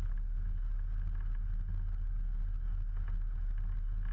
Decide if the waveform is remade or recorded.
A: recorded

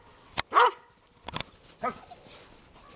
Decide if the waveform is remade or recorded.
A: recorded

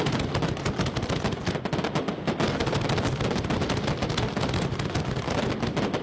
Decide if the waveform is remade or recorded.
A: recorded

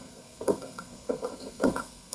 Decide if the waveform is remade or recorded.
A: remade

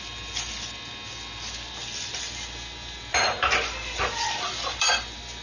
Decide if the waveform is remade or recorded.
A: recorded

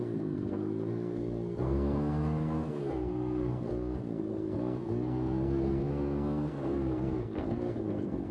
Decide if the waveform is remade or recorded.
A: remade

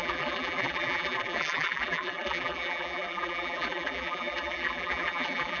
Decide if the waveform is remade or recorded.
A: remade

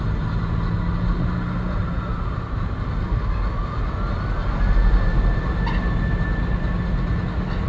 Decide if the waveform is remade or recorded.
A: recorded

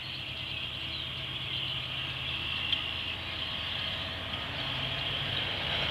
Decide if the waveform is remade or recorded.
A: recorded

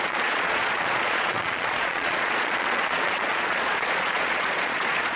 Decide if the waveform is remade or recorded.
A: remade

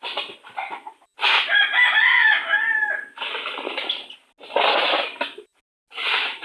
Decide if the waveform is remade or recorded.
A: recorded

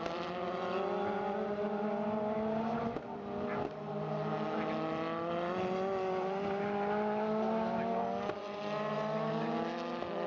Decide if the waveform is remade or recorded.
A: recorded